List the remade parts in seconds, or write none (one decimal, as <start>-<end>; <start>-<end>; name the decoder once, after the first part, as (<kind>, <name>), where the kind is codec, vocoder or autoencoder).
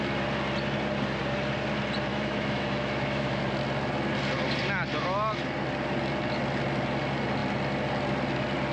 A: 2.1-3.4 (autoencoder, DAC-VAE)